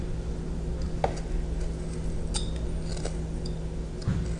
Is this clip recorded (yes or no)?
yes